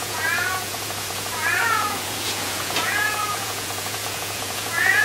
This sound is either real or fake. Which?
fake